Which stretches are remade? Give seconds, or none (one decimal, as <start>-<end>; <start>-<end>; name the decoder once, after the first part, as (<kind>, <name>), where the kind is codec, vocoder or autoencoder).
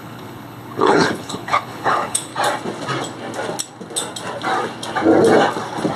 0.0-2.3 (codec, HILCodec)